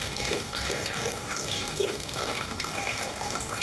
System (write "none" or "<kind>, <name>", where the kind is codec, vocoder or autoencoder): codec, DAC